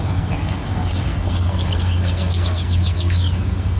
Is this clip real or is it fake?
fake